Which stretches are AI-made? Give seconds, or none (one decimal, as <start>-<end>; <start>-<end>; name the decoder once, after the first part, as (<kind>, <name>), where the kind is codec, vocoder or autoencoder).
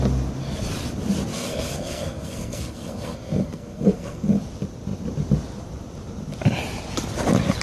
1.3-4.4 (codec, SNAC)